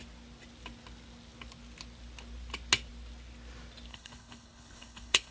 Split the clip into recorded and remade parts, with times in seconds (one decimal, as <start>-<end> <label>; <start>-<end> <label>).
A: 0.0-3.9 recorded; 3.9-5.3 remade